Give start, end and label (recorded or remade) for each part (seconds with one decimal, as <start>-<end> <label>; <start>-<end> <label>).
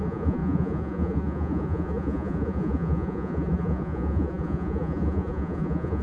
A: 0.0-6.0 remade